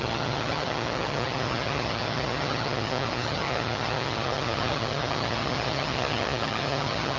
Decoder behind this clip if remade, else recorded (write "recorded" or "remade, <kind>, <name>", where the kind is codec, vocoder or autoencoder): remade, vocoder, HiFi-GAN